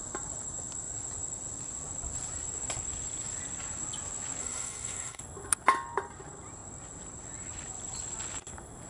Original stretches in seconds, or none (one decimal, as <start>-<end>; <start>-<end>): 0.0-4.4; 5.2-8.9